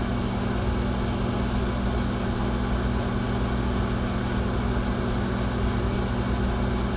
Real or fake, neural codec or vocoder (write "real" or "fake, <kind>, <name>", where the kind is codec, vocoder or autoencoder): real